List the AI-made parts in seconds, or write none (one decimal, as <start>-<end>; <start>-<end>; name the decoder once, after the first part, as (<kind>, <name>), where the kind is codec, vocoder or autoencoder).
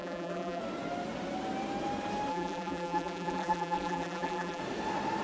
0.0-0.6 (vocoder, BigVGAN v2); 2.3-4.6